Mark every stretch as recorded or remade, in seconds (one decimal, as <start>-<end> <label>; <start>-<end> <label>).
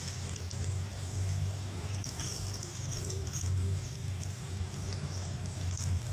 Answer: 0.0-6.1 remade